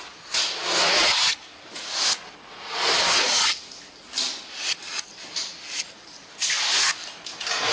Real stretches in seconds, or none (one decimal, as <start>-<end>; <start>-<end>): 0.0-7.7